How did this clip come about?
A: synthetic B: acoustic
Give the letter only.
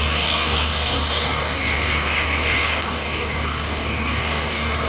A